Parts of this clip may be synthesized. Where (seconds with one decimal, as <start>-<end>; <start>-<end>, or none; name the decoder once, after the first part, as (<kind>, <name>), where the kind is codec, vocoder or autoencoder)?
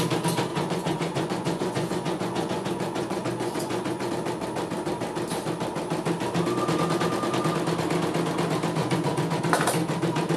0.5-4.1 (vocoder, Vocos); 8.8-9.4